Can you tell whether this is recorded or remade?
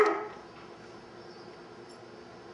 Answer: recorded